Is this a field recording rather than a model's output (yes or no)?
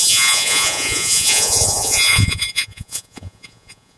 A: no